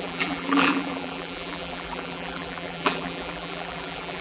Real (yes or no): no